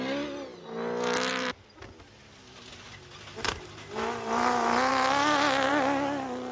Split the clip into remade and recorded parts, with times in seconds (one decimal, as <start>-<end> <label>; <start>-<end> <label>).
0.0-6.5 recorded